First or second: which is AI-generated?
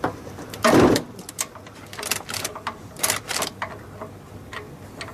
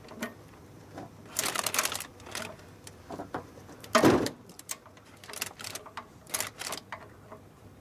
second